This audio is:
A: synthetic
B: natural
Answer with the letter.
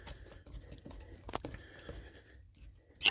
B